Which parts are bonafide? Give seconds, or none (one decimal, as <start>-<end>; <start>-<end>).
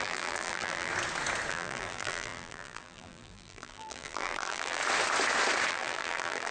0.9-1.5; 4.8-5.7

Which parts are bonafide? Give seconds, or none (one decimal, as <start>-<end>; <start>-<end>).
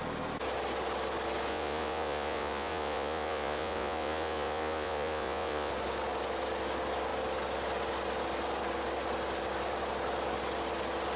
0.0-1.5; 5.7-11.2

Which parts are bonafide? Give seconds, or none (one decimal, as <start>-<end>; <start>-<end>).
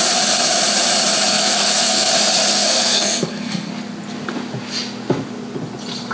0.0-1.3; 2.1-2.5; 3.7-6.1